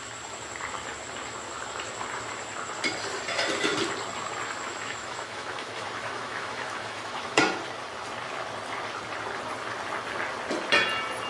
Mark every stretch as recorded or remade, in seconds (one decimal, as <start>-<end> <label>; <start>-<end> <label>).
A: 0.0-4.7 recorded; 4.7-7.4 remade; 7.4-11.3 recorded